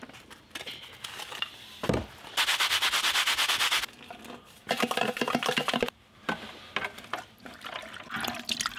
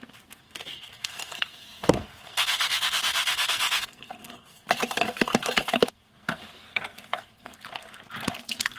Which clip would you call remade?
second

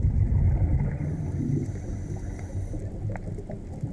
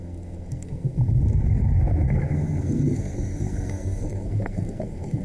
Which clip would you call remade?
second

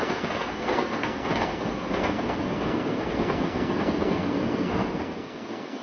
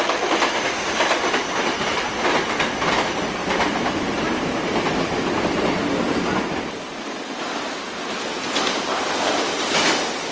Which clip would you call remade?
first